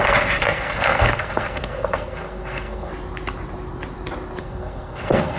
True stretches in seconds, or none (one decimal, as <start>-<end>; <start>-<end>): 2.9-4.4